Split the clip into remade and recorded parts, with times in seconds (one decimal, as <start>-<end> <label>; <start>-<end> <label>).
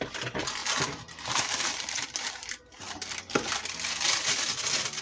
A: 0.0-0.6 recorded; 0.6-3.6 remade; 3.6-5.0 recorded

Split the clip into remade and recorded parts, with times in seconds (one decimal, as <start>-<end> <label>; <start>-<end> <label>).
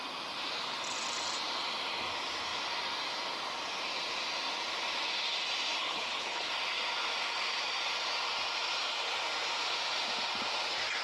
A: 0.0-5.8 recorded; 5.8-6.5 remade; 6.5-11.0 recorded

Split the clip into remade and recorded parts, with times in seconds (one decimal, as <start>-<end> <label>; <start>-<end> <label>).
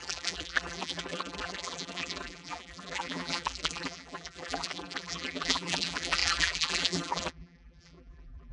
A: 0.0-8.5 remade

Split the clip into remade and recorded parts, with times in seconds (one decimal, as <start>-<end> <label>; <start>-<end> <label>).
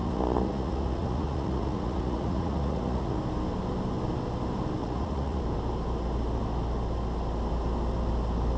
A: 0.0-3.2 remade; 3.2-4.8 recorded; 4.8-5.4 remade; 5.4-8.6 recorded